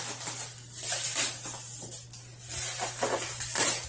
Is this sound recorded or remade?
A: recorded